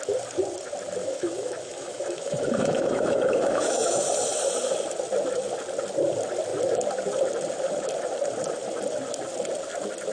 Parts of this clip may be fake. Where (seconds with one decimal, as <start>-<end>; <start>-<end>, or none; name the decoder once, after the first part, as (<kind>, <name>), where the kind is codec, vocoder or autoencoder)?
1.0-4.0 (autoencoder, DAC-VAE)